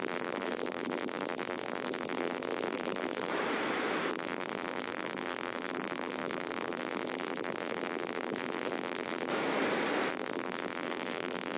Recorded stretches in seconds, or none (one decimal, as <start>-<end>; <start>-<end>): 3.3-4.1; 9.3-10.1